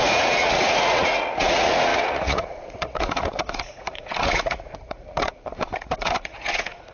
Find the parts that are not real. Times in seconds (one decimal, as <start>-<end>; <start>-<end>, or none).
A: 0.0-6.9